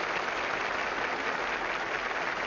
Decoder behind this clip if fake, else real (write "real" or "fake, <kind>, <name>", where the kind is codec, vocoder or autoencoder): real